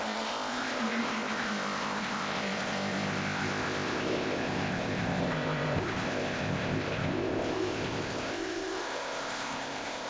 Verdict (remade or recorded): remade